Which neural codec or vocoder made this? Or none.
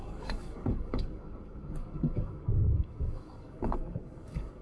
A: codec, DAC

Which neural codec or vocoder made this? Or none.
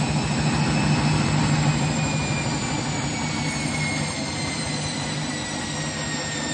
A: none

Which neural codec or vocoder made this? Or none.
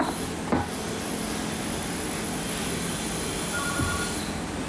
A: none